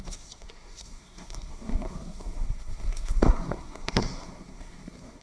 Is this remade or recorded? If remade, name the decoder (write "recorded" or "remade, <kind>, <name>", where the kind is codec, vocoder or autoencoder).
remade, codec, SNAC